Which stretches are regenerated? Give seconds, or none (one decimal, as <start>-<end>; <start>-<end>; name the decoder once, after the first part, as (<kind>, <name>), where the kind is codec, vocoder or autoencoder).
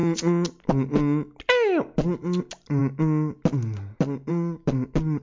none